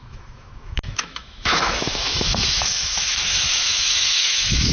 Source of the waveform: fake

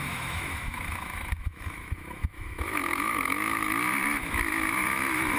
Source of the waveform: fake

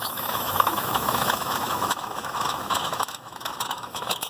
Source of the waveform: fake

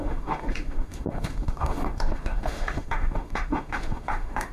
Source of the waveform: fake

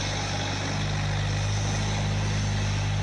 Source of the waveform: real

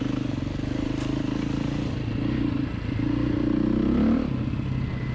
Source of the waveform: real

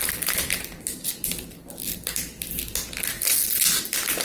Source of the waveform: real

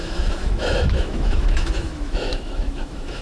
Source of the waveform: fake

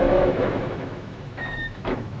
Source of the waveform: fake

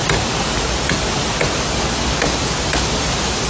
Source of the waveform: real